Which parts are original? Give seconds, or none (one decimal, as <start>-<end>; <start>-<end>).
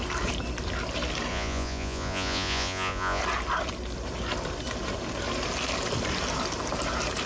0.0-1.3; 3.2-7.3